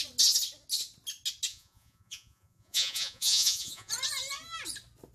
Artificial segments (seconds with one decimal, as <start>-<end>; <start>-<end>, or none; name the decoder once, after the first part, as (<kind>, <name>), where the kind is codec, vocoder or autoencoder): 1.5-3.9 (vocoder, Vocos)